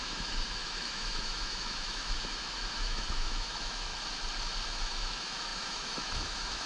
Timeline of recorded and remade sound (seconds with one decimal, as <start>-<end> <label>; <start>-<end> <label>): 0.0-3.9 remade; 3.9-4.7 recorded; 4.7-6.7 remade

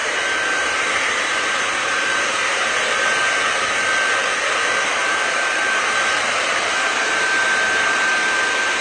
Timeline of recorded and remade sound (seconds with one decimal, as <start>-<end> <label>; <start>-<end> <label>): 0.0-3.4 remade; 3.4-4.9 recorded; 4.9-8.1 remade; 8.1-8.8 recorded